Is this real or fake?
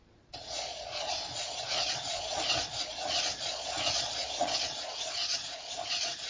fake